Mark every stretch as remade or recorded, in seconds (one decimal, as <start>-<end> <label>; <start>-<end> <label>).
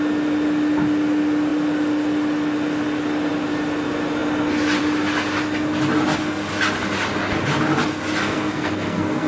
0.0-8.2 recorded; 8.2-9.3 remade